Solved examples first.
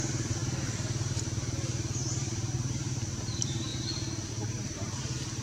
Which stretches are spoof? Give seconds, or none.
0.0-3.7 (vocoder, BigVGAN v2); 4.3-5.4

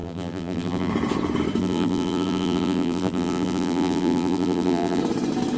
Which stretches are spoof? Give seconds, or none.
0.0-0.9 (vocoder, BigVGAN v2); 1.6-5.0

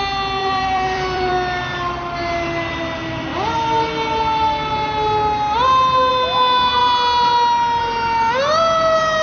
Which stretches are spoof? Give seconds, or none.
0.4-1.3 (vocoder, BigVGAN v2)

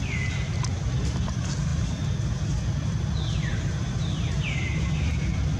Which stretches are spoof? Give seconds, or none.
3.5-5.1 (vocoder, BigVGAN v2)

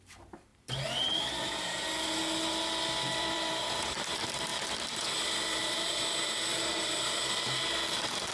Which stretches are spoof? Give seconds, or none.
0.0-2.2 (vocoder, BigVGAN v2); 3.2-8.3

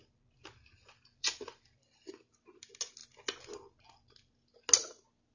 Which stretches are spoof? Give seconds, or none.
0.0-2.5 (vocoder, BigVGAN v2)

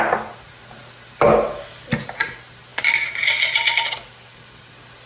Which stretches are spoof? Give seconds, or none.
none

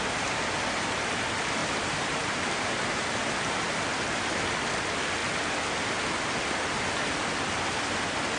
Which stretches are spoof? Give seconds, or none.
1.6-3.9 (vocoder, BigVGAN v2)